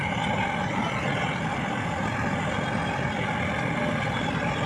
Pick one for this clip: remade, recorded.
recorded